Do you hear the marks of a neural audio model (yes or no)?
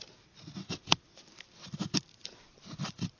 no